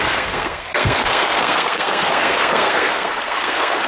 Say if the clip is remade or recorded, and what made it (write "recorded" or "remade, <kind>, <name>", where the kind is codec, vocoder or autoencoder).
remade, codec, SNAC